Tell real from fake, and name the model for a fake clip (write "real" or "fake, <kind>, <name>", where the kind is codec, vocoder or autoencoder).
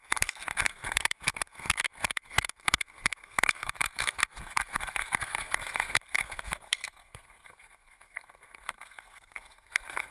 fake, codec, SNAC